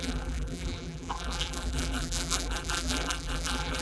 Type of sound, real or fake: fake